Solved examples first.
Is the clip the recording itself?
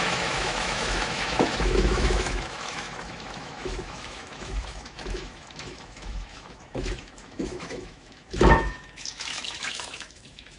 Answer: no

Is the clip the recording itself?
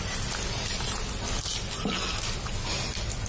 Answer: yes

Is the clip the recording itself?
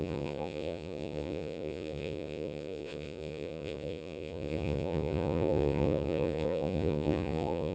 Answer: no